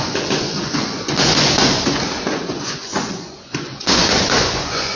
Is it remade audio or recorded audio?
remade